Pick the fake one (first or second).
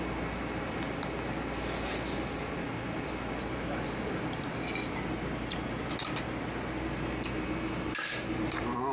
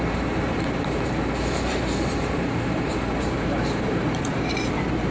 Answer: second